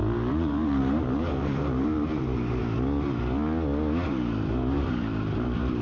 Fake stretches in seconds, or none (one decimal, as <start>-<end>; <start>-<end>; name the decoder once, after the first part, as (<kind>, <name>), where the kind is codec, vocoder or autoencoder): 0.0-2.6 (vocoder, BigVGAN v2); 4.1-5.8